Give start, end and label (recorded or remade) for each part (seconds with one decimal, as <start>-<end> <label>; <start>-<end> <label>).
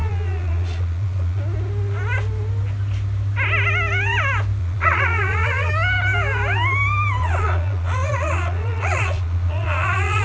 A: 0.0-1.4 remade; 1.4-4.6 recorded; 4.6-5.7 remade; 5.7-7.2 recorded; 7.2-10.2 remade